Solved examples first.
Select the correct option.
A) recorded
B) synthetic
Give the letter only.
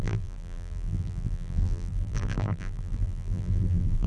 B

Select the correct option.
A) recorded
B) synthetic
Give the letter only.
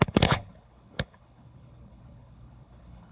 B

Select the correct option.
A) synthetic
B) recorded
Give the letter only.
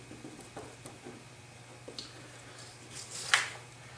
B